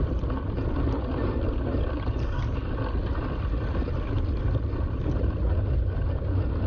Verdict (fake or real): real